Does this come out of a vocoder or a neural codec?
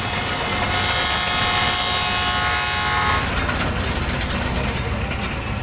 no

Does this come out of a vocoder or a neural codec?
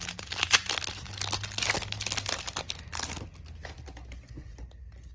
no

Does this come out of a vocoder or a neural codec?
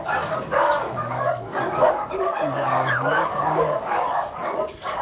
yes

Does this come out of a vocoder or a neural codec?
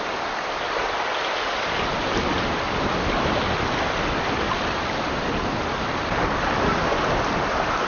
no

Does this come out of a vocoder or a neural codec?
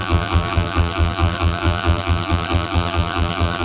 yes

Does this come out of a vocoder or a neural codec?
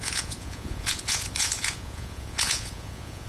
yes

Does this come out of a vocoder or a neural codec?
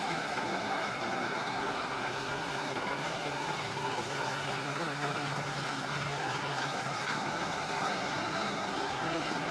yes